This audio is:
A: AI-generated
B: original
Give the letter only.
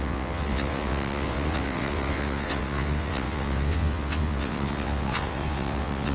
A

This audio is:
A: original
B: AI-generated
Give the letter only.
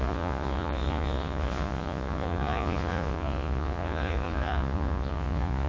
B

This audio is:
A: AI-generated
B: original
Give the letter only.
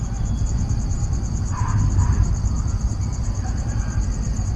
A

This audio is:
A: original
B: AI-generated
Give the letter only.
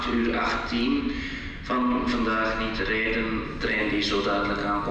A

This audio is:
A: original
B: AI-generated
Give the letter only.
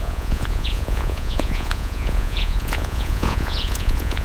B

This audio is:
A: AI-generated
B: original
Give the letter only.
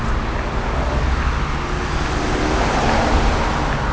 B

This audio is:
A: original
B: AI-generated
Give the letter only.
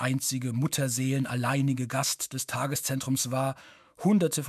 B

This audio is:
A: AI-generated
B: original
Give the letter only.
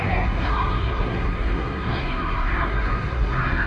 A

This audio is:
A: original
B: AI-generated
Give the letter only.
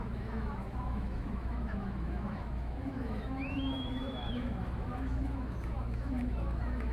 B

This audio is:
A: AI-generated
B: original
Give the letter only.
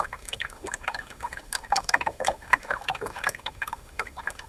A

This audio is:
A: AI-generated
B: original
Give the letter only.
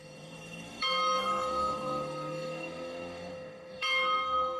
A